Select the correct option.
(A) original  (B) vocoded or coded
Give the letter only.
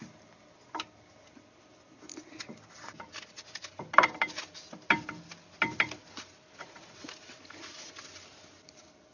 A